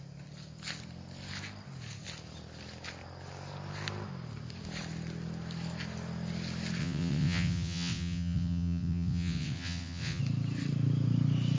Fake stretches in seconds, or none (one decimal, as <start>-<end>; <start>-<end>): 6.8-10.2